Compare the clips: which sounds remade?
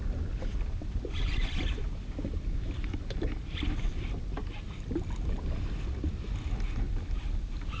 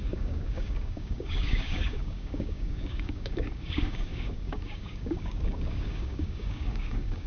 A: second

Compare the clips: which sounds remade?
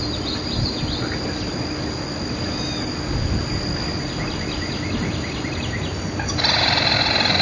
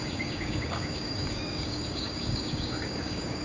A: second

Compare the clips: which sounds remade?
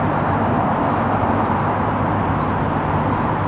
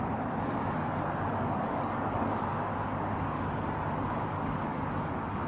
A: second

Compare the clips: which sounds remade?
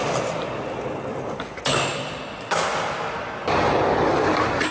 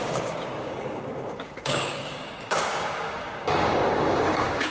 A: second